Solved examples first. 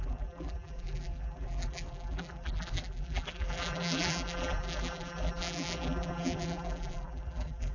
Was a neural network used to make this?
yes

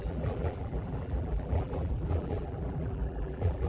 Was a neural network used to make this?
yes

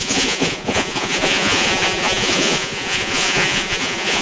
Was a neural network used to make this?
yes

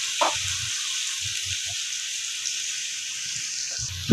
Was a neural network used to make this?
no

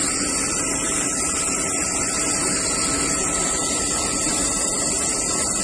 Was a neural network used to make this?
no